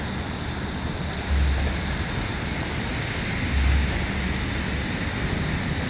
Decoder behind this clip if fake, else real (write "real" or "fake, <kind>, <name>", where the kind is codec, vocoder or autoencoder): real